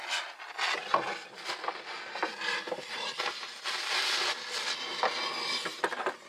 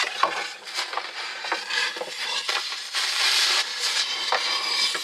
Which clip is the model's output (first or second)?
second